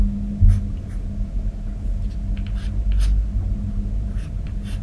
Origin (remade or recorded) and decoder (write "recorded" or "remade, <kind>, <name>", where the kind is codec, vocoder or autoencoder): recorded